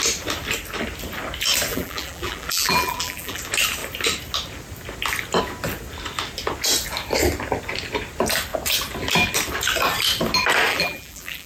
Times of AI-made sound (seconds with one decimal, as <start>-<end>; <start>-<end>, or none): 1.7-3.4; 10.7-11.5